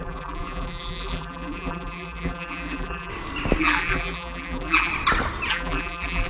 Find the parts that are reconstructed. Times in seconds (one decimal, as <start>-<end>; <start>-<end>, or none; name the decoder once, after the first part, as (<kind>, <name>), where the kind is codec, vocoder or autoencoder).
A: 0.0-3.1 (vocoder, BigVGAN v2); 3.6-4.9; 5.5-6.3